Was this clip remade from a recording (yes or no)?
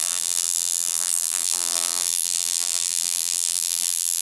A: yes